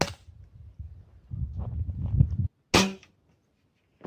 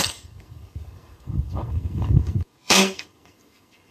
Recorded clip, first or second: first